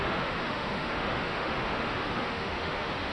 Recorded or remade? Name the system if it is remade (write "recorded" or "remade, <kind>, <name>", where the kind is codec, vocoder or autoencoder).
remade, autoencoder, DAC-VAE